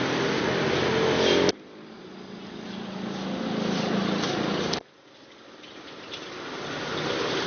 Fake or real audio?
real